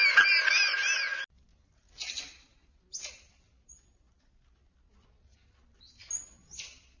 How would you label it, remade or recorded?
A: recorded